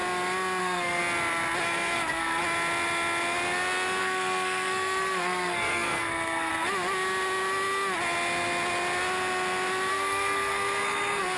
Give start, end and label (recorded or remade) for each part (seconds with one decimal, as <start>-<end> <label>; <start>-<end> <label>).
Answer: 0.0-0.6 recorded; 0.6-1.0 remade; 1.0-1.6 recorded; 1.6-2.4 remade; 2.4-4.0 recorded; 4.0-6.5 remade; 6.5-9.9 recorded; 9.9-11.4 remade